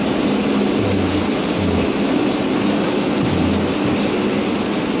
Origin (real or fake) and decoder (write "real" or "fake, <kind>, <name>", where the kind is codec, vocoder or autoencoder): real